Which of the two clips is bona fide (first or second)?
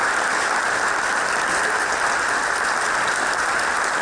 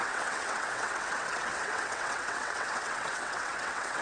first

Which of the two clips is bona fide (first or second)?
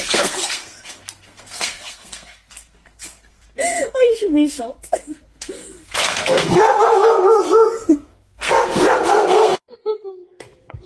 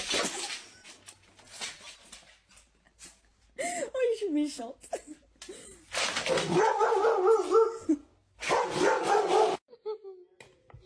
second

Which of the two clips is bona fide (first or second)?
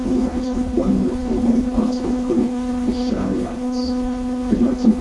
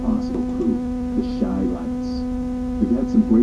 second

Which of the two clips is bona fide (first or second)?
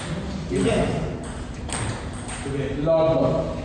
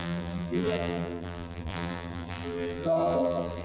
first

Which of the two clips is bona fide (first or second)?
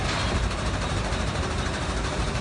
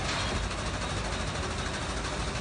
second